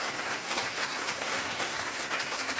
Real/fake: fake